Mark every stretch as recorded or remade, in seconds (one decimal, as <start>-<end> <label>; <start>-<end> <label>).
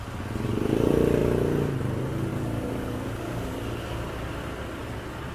0.0-2.3 recorded; 2.3-3.5 remade; 3.5-5.3 recorded